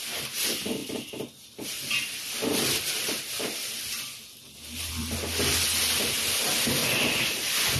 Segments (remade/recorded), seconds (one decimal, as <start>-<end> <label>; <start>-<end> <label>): 0.0-6.8 recorded; 6.8-7.3 remade; 7.3-7.8 recorded